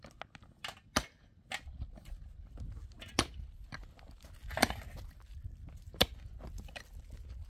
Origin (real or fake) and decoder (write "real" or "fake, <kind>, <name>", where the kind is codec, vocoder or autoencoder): real